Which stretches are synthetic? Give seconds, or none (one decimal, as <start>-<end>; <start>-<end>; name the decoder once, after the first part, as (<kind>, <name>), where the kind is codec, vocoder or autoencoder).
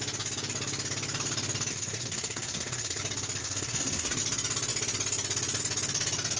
1.7-3.0 (codec, SNAC); 3.4-4.2